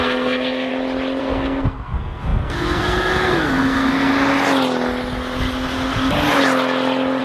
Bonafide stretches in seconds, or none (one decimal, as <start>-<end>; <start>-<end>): 0.7-1.2; 4.1-7.2